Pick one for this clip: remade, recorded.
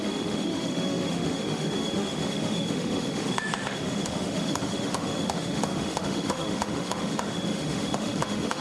remade